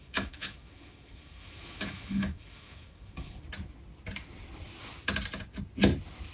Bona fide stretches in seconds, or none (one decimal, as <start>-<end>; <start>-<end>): 3.4-6.3